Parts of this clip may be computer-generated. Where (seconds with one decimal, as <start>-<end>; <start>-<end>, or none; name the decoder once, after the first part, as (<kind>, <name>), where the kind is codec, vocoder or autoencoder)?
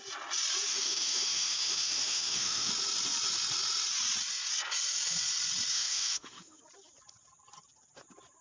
0.7-2.7 (autoencoder, DAC-VAE); 5.7-6.6